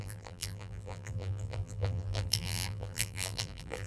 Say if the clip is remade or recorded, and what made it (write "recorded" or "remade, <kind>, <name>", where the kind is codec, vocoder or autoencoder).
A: remade, vocoder, BigVGAN v2